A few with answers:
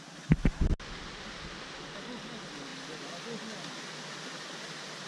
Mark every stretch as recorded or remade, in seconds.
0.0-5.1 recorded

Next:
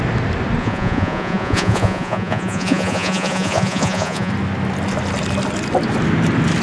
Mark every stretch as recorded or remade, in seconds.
0.0-0.6 recorded; 0.6-4.3 remade; 4.3-6.6 recorded

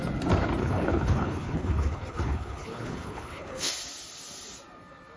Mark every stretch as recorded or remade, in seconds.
0.0-0.6 recorded; 0.6-3.7 remade; 3.7-5.2 recorded